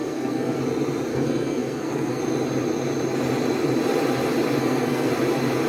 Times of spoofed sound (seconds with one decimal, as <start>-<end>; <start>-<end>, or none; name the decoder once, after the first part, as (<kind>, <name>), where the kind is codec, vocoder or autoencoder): 0.0-0.6 (codec, SNAC); 1.1-2.2; 4.6-5.1